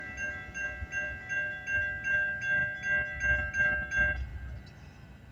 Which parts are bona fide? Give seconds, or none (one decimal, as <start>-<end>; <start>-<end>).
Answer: 0.0-5.3